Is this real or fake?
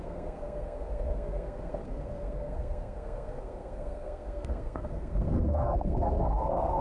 fake